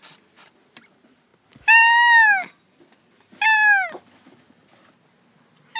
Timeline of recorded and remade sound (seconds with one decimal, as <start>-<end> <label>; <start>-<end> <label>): 0.0-5.8 recorded